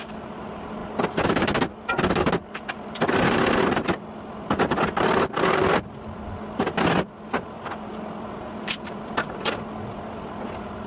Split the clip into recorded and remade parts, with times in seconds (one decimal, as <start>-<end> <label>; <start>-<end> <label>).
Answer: 0.0-10.9 recorded